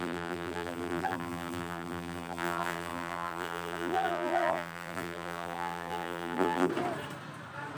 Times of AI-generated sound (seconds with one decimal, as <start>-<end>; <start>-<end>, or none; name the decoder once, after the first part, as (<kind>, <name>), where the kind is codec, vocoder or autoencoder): 0.0-6.7 (vocoder, BigVGAN v2)